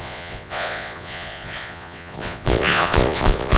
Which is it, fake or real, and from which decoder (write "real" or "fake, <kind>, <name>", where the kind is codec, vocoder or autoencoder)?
fake, vocoder, Vocos